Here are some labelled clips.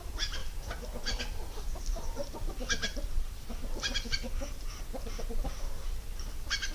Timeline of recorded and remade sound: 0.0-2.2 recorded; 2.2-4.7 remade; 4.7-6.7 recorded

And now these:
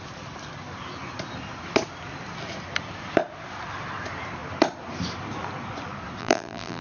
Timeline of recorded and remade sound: 0.0-6.2 recorded; 6.2-6.8 remade

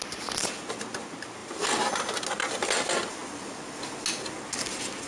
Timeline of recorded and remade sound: 0.0-1.4 recorded; 1.4-2.2 remade; 2.2-5.1 recorded

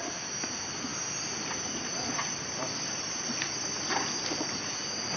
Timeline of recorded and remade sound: 0.0-5.2 remade